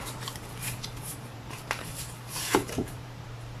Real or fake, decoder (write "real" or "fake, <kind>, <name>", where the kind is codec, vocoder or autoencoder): fake, vocoder, BigVGAN v2